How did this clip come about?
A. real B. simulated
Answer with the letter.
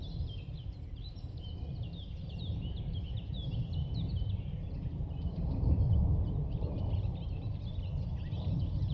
B